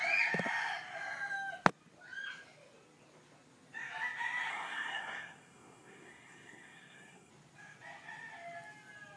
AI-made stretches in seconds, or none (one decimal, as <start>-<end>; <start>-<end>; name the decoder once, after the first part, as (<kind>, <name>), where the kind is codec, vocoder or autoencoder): 4.5-7.3 (codec, SNAC)